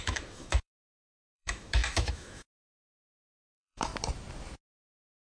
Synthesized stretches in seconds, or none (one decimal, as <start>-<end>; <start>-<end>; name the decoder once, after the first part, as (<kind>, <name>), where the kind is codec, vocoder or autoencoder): 0.0-3.9 (autoencoder, DAC-VAE)